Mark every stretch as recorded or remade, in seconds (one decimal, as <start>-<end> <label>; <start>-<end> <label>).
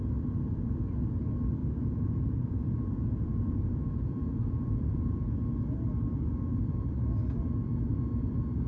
0.0-1.6 recorded; 1.6-5.3 remade; 5.3-8.7 recorded